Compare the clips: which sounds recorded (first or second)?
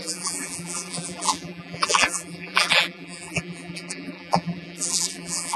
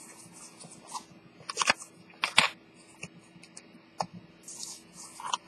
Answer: second